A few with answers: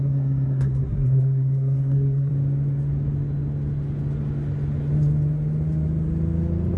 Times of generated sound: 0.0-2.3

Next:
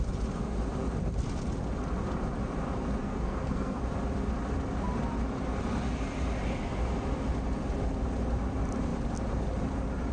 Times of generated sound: 3.0-3.8

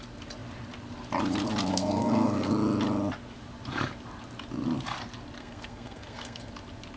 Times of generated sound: 1.7-2.5; 5.4-6.5